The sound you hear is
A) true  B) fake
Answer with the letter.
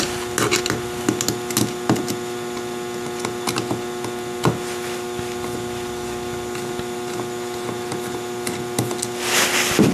A